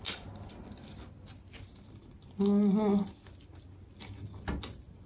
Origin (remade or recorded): recorded